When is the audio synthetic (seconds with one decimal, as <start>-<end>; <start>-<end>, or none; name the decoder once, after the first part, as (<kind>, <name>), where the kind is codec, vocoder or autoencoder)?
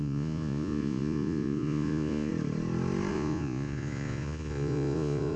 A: 0.0-2.3 (vocoder, Vocos); 3.1-5.4